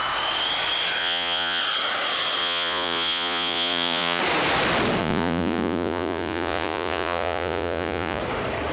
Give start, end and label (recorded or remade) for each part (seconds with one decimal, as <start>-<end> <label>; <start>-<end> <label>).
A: 0.0-1.0 recorded; 1.0-1.6 remade; 1.6-2.4 recorded; 2.4-4.2 remade; 4.2-5.0 recorded; 5.0-8.2 remade; 8.2-8.7 recorded